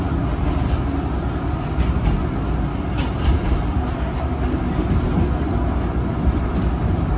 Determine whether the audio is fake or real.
real